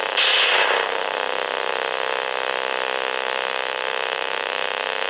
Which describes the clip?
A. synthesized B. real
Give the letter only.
A